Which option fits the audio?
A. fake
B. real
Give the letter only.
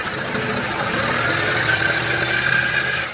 B